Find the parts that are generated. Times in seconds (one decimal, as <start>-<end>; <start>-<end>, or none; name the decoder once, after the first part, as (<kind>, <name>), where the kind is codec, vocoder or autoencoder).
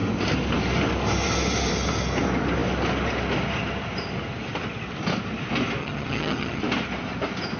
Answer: 5.8-6.6 (vocoder, HiFi-GAN)